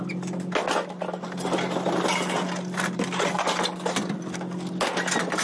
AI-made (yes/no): no